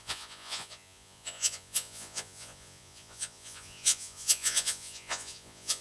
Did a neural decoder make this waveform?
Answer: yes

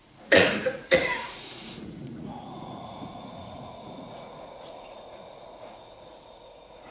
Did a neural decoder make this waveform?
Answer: yes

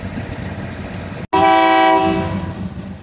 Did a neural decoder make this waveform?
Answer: no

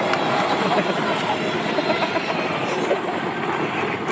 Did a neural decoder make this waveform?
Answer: no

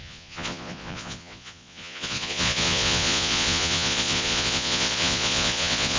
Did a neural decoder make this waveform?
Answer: yes